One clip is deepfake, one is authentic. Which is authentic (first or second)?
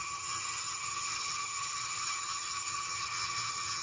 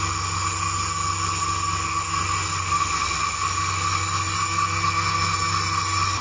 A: second